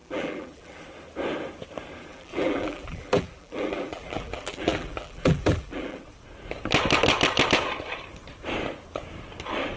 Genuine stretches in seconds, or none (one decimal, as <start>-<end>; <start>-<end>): 0.8-2.1; 6.0-9.8